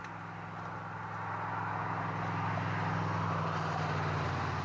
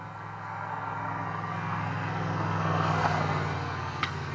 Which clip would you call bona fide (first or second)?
first